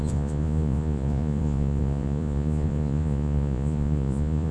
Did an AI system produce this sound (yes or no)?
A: yes